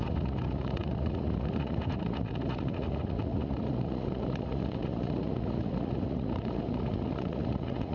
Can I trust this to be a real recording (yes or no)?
no